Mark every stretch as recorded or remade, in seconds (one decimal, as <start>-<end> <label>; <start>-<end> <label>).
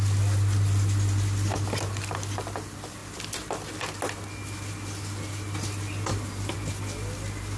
0.0-7.6 recorded